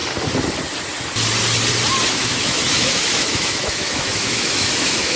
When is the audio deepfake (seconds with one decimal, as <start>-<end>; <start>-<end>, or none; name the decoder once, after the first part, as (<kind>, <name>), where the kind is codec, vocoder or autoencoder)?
2.1-5.2 (autoencoder, DAC-VAE)